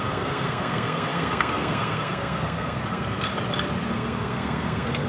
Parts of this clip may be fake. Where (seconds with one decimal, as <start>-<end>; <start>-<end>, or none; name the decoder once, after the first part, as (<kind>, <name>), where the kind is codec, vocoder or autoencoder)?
0.0-3.3 (codec, SNAC); 3.9-5.1